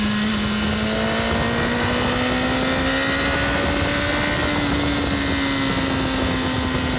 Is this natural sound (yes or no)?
yes